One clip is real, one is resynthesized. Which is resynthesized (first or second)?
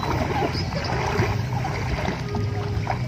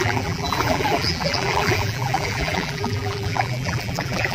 second